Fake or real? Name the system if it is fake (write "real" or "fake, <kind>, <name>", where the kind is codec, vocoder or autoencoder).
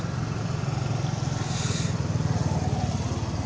real